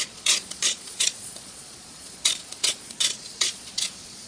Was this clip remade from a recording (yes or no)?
yes